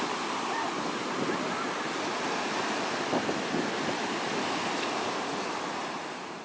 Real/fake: real